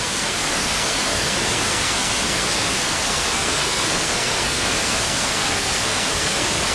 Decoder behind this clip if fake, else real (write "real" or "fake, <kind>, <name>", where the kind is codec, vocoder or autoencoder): fake, codec, SNAC